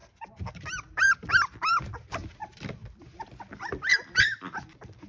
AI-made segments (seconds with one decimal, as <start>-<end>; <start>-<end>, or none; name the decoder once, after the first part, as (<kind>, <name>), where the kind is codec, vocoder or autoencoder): 0.0-1.8 (vocoder, BigVGAN v2); 2.4-3.0; 3.9-5.1